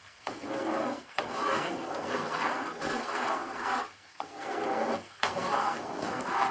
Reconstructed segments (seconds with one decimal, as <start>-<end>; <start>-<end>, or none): 0.0-6.5